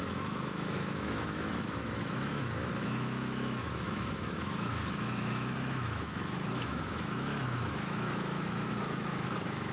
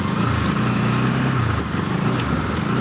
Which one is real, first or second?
second